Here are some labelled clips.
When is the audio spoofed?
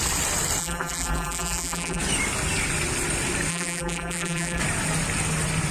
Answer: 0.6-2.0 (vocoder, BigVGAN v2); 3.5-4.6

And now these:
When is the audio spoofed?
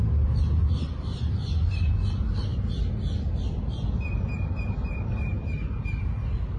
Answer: none